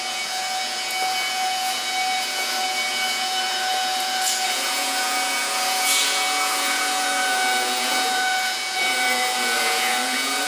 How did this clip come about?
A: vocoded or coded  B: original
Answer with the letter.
A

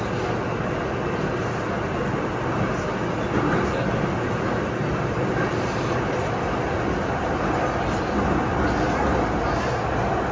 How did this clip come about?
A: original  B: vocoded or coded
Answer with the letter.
A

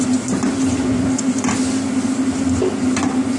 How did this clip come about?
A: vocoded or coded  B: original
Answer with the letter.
B